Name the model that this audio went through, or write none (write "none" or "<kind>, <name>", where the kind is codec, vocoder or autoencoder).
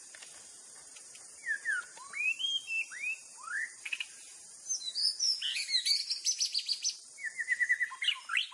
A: none